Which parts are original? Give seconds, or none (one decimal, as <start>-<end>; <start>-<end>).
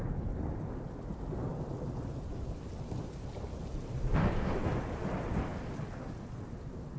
0.0-7.0